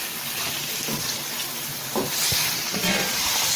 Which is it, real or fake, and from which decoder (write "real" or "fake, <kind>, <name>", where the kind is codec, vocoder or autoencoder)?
fake, vocoder, BigVGAN v2